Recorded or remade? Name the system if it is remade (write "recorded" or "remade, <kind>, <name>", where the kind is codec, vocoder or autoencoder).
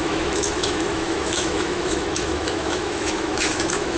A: remade, autoencoder, DAC-VAE